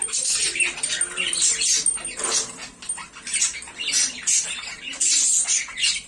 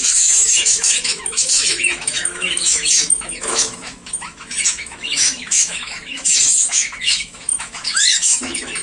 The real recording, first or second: first